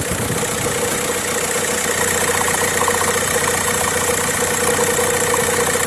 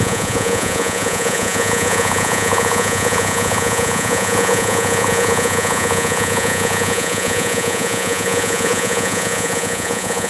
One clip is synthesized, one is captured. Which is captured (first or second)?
first